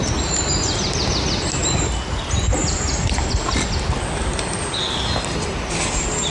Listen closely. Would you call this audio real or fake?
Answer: real